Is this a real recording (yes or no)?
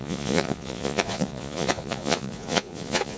no